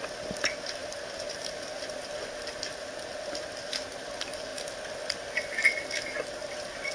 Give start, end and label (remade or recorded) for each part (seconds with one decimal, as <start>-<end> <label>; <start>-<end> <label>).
0.0-6.9 recorded

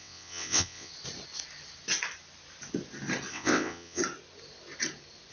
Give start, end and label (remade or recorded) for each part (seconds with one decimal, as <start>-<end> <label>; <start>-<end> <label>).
0.0-0.9 remade; 0.9-3.3 recorded; 3.3-4.0 remade; 4.0-5.3 recorded

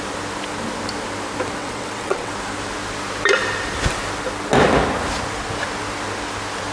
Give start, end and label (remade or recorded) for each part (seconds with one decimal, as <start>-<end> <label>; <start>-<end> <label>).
0.0-1.6 recorded; 1.6-2.3 remade; 2.3-6.7 recorded

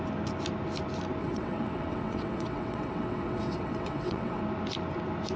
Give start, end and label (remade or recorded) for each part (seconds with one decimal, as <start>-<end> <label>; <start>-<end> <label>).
0.0-1.2 recorded; 1.2-4.4 remade; 4.4-5.4 recorded